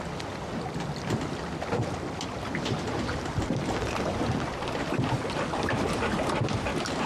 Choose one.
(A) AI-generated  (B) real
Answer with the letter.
B